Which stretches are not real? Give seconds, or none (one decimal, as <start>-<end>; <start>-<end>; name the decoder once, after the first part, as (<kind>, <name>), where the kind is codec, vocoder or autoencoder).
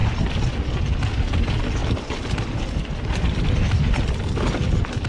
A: 0.0-0.5 (vocoder, BigVGAN v2); 1.8-5.1